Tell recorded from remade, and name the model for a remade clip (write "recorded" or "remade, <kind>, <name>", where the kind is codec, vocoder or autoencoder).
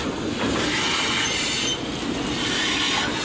recorded